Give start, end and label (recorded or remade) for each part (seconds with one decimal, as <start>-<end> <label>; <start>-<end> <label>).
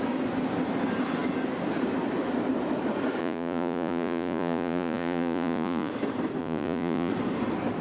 0.0-3.2 recorded; 3.2-5.9 remade; 5.9-6.4 recorded; 6.4-7.1 remade; 7.1-7.8 recorded